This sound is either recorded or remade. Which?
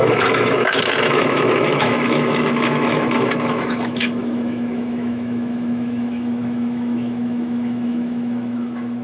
remade